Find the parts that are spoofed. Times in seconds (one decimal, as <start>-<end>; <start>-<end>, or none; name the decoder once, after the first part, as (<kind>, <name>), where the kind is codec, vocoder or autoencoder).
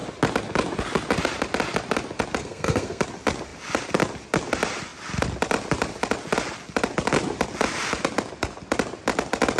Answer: 2.4-3.0 (codec, SNAC)